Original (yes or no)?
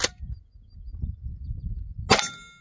yes